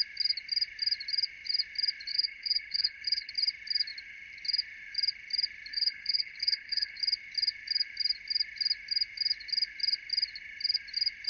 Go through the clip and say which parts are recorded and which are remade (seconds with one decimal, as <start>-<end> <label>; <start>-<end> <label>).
0.0-2.1 recorded; 2.1-3.3 remade; 3.3-5.7 recorded; 5.7-7.0 remade; 7.0-11.3 recorded